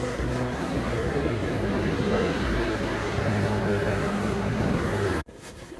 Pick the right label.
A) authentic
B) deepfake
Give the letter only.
B